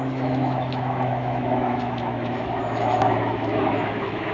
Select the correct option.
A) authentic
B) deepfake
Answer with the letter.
B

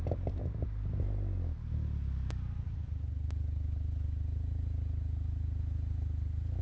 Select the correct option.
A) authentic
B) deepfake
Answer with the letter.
A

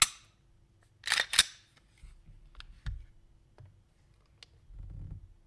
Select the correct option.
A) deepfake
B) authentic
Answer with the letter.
B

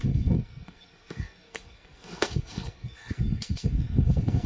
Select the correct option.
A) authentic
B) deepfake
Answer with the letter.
B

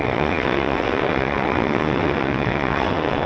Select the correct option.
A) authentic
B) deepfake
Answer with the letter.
B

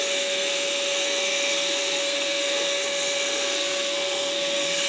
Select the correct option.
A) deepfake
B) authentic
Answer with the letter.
A